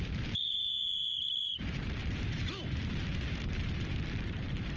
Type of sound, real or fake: fake